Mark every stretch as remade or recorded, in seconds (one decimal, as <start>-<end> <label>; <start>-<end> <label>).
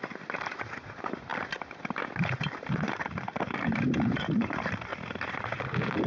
0.0-1.3 remade; 1.3-2.2 recorded; 2.2-4.9 remade; 4.9-5.6 recorded; 5.6-6.1 remade